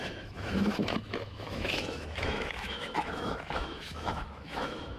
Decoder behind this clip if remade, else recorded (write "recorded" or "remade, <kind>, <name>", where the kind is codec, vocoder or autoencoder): remade, autoencoder, DAC-VAE